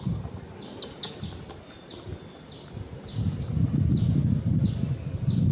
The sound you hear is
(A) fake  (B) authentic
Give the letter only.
B